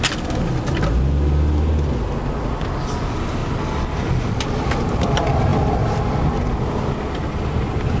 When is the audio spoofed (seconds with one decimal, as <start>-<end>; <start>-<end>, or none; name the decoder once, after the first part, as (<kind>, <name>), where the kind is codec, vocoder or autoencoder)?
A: none